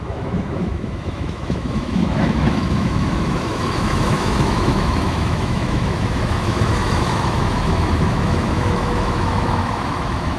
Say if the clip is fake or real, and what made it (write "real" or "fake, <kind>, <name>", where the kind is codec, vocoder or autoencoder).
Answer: fake, autoencoder, DAC-VAE